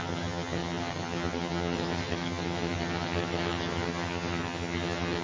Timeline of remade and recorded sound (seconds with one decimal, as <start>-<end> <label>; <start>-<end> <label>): 0.0-5.2 remade